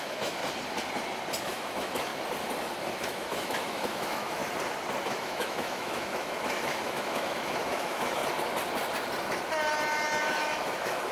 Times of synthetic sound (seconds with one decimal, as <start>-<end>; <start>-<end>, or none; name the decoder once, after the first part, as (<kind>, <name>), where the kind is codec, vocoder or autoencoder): 0.0-0.4 (autoencoder, DAC-VAE); 1.4-2.1; 3.0-4.4; 5.0-8.2; 10.2-11.1